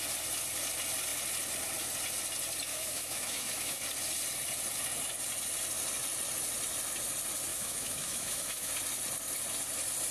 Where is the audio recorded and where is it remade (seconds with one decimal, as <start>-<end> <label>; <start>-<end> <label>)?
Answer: 0.0-2.7 recorded; 2.7-3.8 remade; 3.8-7.5 recorded; 7.5-8.7 remade; 8.7-10.1 recorded